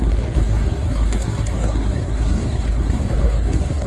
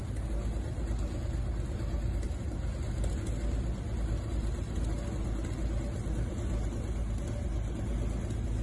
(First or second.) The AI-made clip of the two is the first